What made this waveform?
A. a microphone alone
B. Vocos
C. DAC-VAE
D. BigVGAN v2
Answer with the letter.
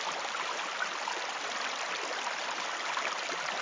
A